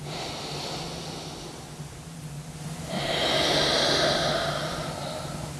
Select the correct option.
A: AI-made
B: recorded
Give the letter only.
B